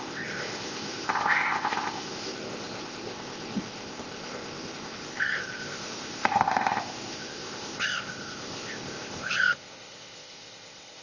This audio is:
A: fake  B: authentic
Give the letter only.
A